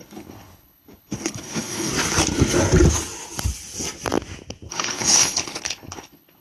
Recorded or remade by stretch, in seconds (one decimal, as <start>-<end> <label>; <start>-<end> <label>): 0.0-1.9 remade; 1.9-4.7 recorded; 4.7-6.4 remade